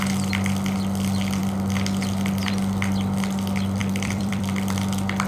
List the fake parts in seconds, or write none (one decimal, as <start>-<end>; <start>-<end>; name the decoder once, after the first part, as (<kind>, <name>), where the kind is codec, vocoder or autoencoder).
3.8-5.3 (vocoder, BigVGAN v2)